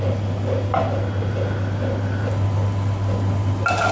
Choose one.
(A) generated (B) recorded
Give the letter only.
B